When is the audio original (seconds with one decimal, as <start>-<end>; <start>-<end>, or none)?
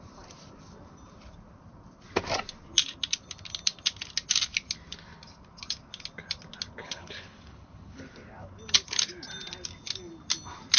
0.0-6.8; 8.0-10.8